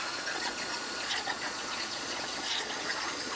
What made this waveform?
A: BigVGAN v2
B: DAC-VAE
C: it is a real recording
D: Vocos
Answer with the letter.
D